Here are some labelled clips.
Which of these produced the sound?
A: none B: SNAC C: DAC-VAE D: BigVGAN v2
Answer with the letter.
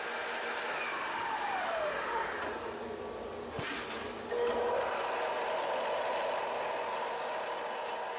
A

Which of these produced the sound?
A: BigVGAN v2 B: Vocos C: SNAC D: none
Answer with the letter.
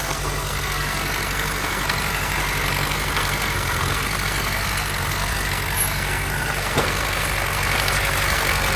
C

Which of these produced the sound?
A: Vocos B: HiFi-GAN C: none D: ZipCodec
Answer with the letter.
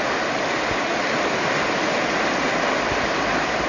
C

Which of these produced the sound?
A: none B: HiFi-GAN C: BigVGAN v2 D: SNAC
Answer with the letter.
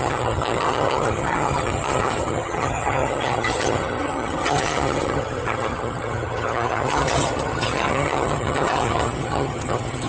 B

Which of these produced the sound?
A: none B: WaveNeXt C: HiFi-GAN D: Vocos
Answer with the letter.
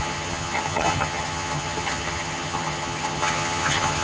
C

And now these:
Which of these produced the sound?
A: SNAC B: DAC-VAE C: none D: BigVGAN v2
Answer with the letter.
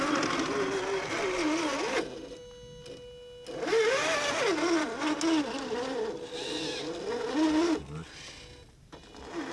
C